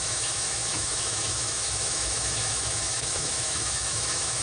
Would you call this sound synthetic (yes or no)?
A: yes